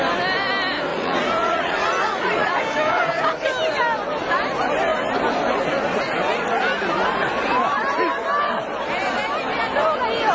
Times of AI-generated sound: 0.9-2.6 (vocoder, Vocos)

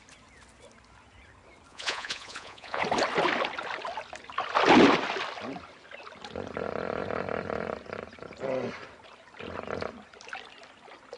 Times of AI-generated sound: 1.7-2.8 (vocoder, Vocos)

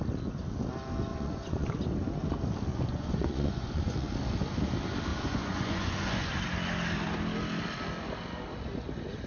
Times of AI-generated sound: 1.1-1.7 (vocoder, Vocos); 2.7-4.1; 5.1-6.3